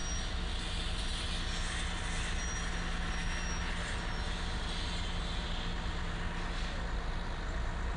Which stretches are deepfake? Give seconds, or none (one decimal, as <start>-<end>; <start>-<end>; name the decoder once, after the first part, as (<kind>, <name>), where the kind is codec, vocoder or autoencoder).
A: none

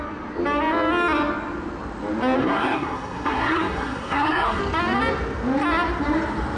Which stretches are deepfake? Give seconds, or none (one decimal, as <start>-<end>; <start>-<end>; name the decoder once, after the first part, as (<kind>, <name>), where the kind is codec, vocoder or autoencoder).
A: 2.4-4.6 (codec, SNAC)

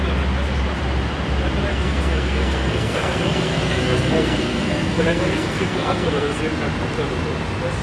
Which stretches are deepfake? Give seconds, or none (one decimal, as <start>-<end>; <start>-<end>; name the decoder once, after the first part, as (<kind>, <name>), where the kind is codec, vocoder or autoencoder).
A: 1.7-6.4 (codec, SNAC)

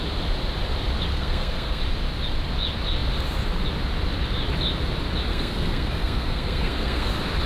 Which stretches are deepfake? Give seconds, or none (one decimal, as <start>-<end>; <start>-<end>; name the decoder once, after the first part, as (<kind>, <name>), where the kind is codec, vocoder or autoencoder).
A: 1.1-1.8 (codec, SNAC); 5.3-7.1

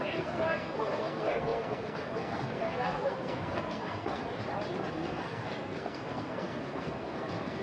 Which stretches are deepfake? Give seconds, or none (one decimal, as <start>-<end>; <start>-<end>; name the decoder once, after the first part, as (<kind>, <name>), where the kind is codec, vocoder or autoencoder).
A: 0.0-4.2 (codec, SNAC); 4.9-7.6

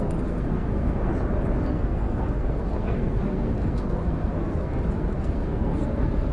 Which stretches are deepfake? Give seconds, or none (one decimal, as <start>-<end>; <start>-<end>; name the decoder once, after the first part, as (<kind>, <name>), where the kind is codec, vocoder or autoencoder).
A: 0.0-1.1 (codec, SNAC); 1.7-6.3